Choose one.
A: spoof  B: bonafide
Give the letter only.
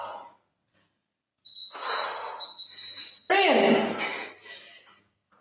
B